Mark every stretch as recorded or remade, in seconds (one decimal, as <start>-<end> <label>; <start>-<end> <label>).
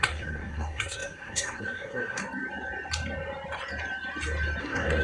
0.0-2.2 remade; 2.2-4.6 recorded; 4.6-5.0 remade